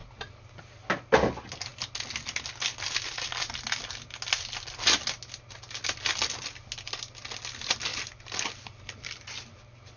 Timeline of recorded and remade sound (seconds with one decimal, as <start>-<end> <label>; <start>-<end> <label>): 0.0-7.9 recorded; 7.9-10.0 remade